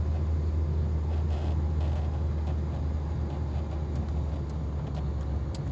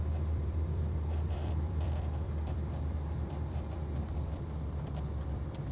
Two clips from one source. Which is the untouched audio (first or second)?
first